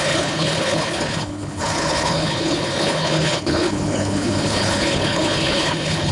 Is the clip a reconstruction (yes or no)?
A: yes